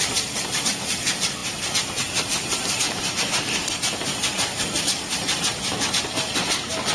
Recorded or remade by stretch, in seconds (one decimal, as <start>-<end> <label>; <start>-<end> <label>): 0.0-6.9 recorded